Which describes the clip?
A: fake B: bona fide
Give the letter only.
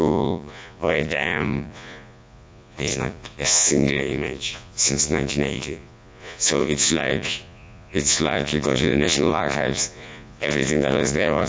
A